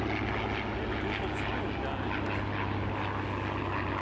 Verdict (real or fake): real